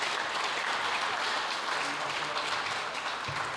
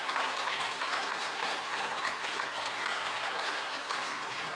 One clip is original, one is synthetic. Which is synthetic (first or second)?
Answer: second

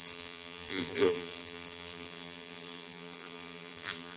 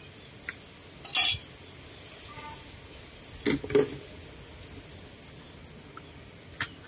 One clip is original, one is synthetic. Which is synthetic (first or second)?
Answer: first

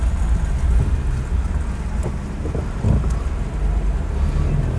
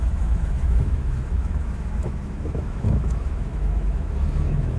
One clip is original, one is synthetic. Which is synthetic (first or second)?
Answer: second